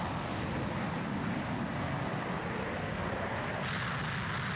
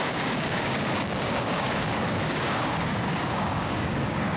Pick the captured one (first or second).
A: first